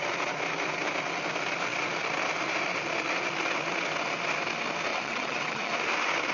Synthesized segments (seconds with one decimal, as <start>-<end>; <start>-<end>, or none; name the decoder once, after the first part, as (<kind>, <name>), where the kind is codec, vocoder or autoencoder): 4.9-5.7 (vocoder, WaveNeXt)